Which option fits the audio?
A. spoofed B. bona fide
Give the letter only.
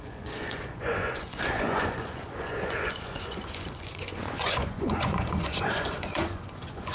A